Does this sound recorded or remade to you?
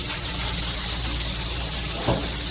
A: recorded